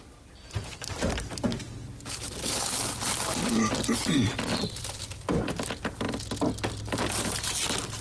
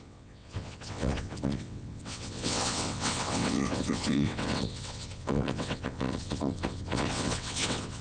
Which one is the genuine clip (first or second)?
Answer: first